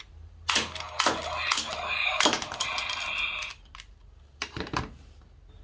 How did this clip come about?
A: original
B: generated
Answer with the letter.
A